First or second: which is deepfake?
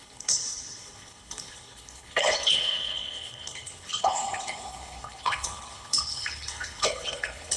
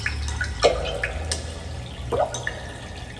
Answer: first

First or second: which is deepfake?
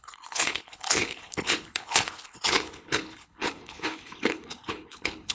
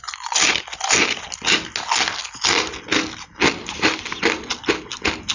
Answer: first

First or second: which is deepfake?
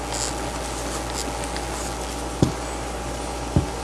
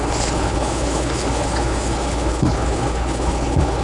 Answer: second